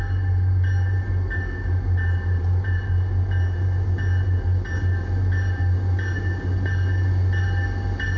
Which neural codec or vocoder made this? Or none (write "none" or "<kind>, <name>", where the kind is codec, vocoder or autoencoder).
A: none